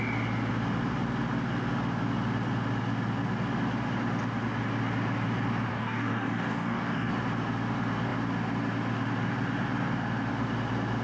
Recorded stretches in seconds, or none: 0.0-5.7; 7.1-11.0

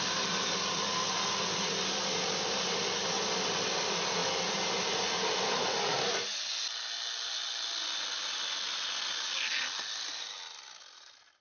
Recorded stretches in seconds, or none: 0.0-11.4

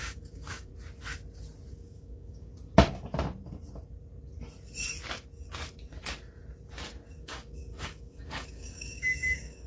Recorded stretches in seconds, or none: 0.7-1.7; 2.5-7.2

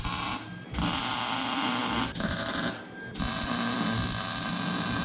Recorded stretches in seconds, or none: 0.0-5.0

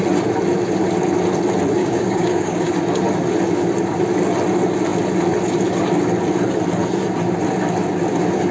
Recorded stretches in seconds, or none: 0.0-1.8; 2.7-8.5

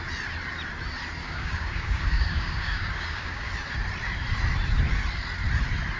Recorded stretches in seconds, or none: 0.0-1.2; 3.5-6.0

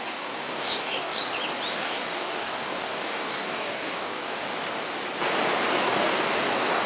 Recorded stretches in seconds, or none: 1.2-1.7; 4.4-5.7

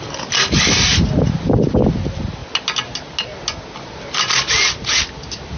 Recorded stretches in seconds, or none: 0.0-5.6